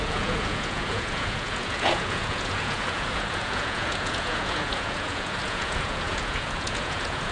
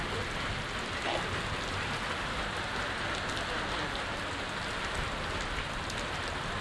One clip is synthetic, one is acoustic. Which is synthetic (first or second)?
first